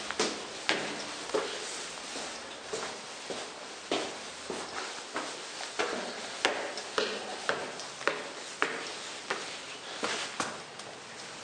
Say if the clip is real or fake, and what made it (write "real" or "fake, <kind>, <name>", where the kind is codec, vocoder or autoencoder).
real